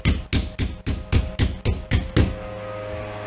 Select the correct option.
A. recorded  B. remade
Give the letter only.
A